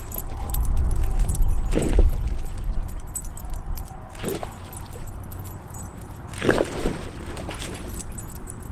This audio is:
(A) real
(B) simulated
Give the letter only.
A